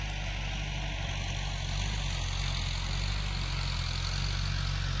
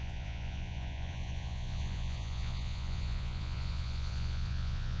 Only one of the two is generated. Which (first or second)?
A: second